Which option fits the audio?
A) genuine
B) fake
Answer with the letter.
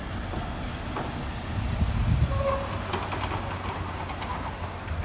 A